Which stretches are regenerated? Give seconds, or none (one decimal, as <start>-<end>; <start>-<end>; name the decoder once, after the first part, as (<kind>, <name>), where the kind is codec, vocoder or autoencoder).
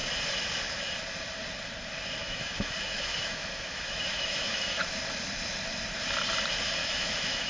2.2-4.8 (autoencoder, DAC-VAE); 6.8-7.5